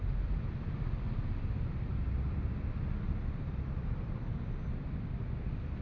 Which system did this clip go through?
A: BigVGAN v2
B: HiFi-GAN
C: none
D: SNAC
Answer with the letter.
C